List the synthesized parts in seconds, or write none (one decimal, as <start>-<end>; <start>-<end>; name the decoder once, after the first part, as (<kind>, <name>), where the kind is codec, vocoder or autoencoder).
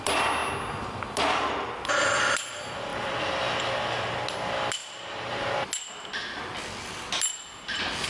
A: none